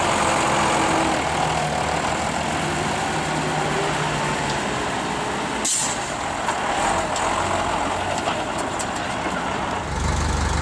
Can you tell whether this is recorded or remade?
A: recorded